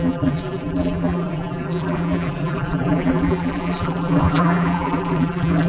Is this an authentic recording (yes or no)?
no